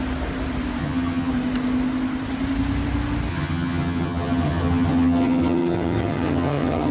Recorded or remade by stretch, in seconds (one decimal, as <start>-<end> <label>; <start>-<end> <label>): 0.0-0.8 recorded; 0.8-1.3 remade; 1.3-3.3 recorded; 3.3-6.9 remade